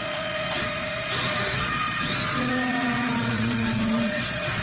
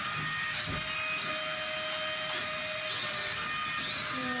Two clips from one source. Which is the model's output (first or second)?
first